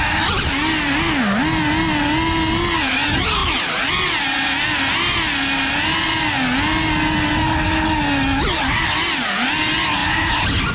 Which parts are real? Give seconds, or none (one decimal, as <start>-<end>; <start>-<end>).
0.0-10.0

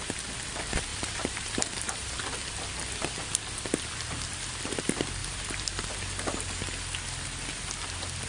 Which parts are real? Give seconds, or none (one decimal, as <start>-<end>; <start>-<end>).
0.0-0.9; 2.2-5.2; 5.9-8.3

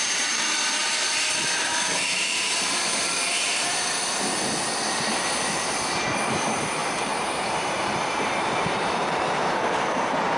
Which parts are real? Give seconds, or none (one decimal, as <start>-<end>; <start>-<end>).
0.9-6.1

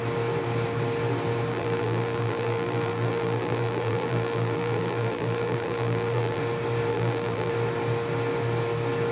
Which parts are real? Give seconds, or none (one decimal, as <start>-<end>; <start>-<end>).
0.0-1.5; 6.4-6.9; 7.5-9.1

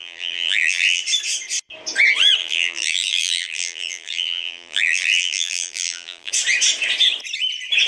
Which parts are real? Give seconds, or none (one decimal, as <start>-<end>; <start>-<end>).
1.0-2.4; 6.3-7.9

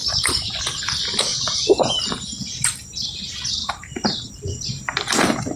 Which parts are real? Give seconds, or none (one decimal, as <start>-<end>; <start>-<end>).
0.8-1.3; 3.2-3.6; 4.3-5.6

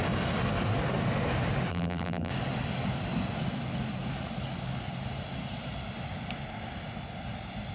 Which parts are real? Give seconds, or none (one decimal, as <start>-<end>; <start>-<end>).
0.0-1.7; 2.3-7.7